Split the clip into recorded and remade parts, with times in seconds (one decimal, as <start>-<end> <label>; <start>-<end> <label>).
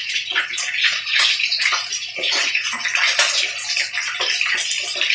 0.0-2.9 remade; 2.9-5.1 recorded